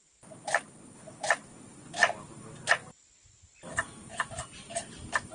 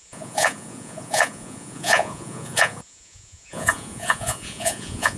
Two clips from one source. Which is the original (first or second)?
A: first